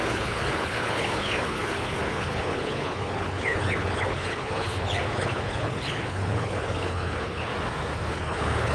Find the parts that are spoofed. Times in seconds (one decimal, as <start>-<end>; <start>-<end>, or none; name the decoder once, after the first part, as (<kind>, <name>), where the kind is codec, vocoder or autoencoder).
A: 0.0-7.5 (codec, HILCodec); 8.1-8.7